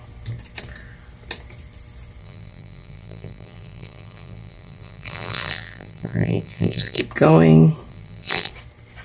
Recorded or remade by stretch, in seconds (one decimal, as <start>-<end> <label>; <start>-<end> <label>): 0.0-2.2 recorded; 2.2-7.0 remade; 7.0-7.9 recorded; 7.9-8.5 remade; 8.5-9.0 recorded